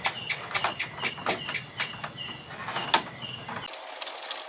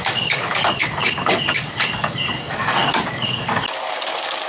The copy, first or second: second